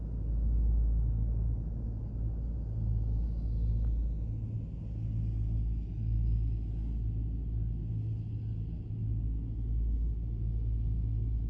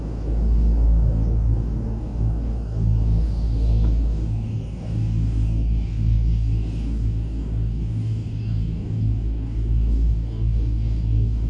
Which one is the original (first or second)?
first